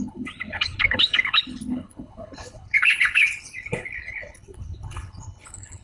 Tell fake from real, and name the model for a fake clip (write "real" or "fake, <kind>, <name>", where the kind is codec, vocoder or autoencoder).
fake, codec, HILCodec